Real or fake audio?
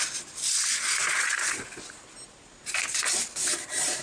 real